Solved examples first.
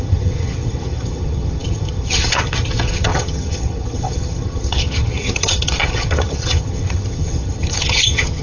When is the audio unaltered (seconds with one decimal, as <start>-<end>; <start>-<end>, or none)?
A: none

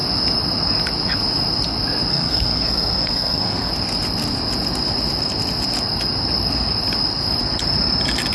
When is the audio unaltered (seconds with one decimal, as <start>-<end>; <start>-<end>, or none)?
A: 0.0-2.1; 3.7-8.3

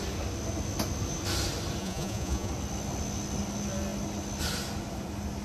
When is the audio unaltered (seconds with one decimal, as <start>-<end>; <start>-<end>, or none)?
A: 0.0-1.8; 2.5-5.4

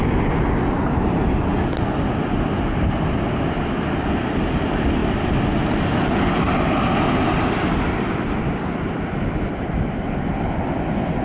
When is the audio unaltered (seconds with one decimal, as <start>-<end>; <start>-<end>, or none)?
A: 0.0-11.2

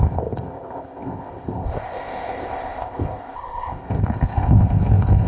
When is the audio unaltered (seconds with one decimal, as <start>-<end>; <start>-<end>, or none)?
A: none

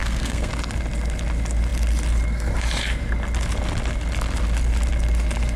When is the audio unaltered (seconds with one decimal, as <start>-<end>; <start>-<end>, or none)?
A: 0.5-5.6

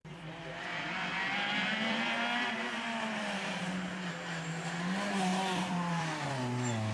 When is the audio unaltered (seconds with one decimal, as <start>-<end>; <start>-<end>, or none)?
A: 4.1-5.3; 6.3-6.9

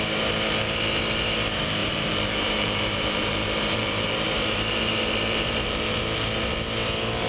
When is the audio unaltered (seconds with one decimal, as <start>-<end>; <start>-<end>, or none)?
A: 0.0-1.8; 6.0-7.3